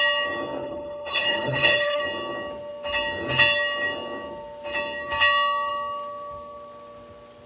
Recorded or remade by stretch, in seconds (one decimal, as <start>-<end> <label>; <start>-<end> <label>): 0.0-0.6 recorded; 0.6-2.0 remade; 2.0-7.5 recorded